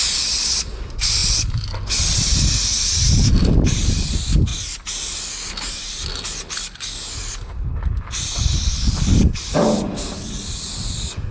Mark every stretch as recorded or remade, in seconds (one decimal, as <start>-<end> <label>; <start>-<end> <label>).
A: 0.0-11.3 recorded